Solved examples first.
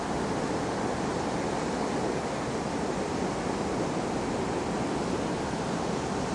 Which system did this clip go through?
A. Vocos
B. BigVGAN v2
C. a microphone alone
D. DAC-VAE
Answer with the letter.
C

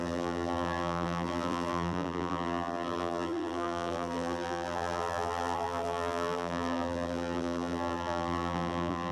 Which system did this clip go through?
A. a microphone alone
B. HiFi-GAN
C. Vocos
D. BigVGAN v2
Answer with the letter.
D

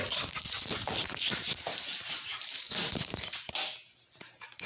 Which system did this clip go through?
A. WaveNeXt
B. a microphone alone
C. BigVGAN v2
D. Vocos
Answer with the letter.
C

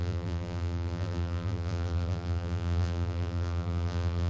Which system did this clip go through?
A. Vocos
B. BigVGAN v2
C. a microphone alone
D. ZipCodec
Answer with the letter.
B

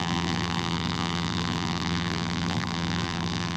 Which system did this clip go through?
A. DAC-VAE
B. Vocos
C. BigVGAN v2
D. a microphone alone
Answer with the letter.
C